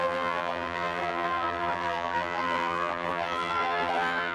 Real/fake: fake